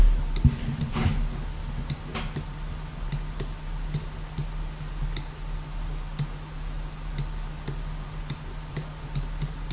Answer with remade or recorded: recorded